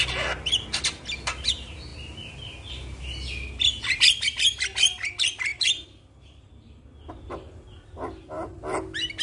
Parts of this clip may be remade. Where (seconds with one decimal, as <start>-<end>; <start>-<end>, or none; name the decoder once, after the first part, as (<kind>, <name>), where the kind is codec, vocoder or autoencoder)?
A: none

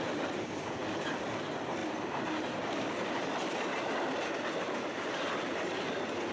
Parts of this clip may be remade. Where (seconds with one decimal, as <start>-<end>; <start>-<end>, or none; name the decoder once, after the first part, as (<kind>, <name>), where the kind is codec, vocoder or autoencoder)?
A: none